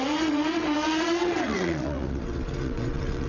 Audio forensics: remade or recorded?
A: remade